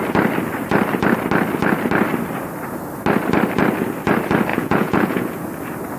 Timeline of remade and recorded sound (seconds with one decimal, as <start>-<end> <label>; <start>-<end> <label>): 0.0-4.5 recorded; 4.5-5.3 remade; 5.3-6.0 recorded